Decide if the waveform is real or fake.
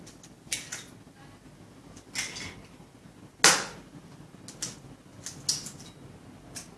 real